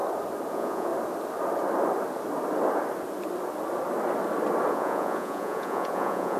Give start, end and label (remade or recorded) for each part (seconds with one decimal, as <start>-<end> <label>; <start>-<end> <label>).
0.0-0.5 recorded; 0.5-0.9 remade; 0.9-4.7 recorded; 4.7-6.4 remade